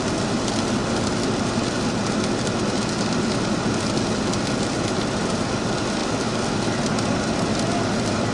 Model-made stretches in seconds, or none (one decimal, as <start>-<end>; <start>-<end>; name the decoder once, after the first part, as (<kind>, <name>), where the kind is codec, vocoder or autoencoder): none